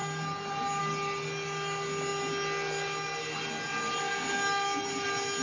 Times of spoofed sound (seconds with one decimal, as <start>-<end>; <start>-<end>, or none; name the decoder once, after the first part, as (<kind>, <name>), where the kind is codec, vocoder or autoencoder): none